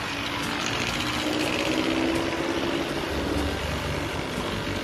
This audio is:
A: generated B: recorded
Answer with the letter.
B